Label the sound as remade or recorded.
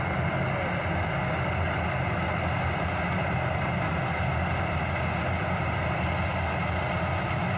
recorded